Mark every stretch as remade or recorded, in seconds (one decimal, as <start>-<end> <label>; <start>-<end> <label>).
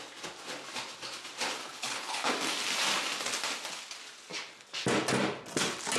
0.0-1.6 recorded; 1.6-2.3 remade; 2.3-6.0 recorded